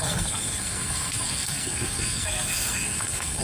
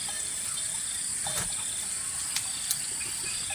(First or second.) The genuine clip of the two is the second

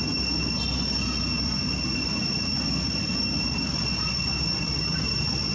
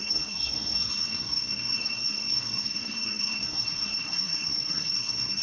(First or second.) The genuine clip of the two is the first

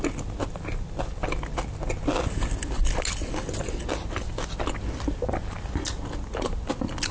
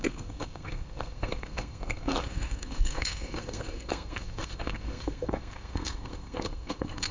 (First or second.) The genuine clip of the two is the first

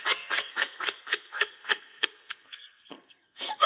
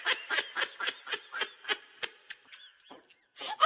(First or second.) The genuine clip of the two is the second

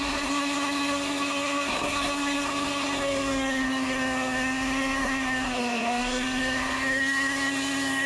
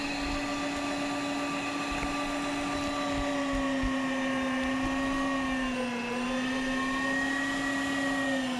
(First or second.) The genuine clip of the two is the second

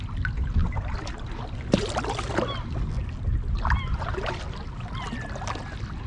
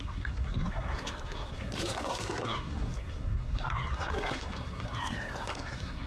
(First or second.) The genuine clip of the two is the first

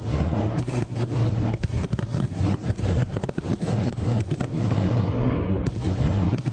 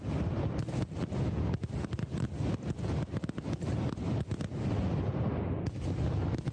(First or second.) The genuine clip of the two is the second